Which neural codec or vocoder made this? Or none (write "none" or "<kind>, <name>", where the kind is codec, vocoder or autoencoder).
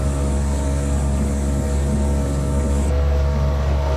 codec, DAC